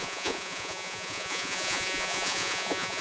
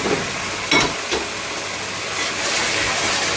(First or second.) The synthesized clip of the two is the first